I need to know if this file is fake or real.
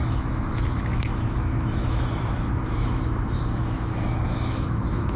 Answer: fake